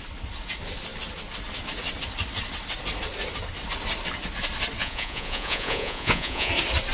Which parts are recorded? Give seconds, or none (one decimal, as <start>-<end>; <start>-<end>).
0.0-4.8; 6.5-6.9